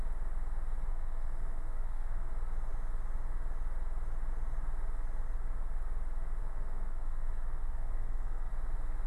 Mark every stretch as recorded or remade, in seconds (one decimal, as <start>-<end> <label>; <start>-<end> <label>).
0.0-0.9 recorded; 0.9-2.3 remade; 2.3-6.4 recorded; 6.4-8.5 remade; 8.5-9.1 recorded